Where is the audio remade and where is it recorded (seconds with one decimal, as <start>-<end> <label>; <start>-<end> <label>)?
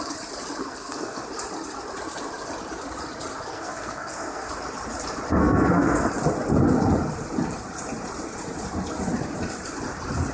0.0-0.6 recorded; 0.6-1.3 remade; 1.3-3.5 recorded; 3.5-4.5 remade; 4.5-5.4 recorded; 5.4-6.1 remade; 6.1-10.3 recorded